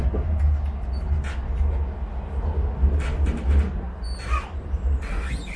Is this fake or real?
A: real